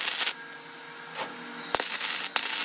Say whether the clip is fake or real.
real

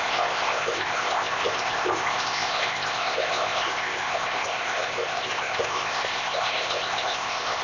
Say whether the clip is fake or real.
fake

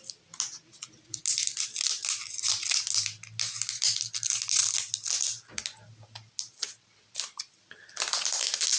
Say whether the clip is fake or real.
real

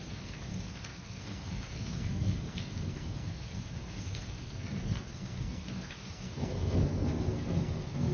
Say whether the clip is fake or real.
fake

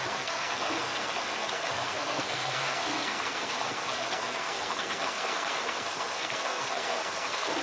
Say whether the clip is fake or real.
fake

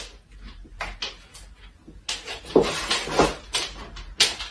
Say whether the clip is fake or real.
real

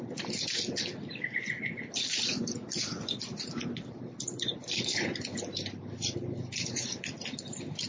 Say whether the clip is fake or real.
real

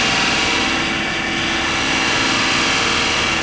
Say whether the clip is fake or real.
real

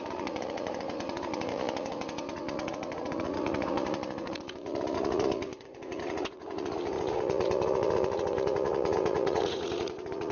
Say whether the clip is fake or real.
fake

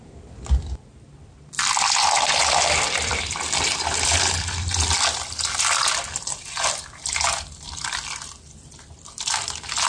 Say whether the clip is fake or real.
fake